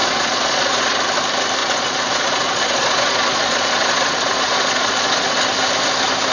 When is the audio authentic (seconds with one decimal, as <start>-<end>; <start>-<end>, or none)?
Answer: 1.0-1.6; 5.4-6.3